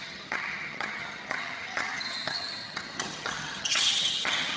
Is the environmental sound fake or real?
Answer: fake